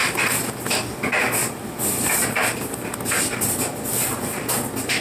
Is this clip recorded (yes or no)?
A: yes